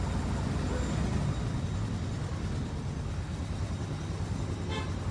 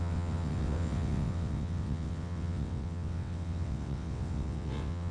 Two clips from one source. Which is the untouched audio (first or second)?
first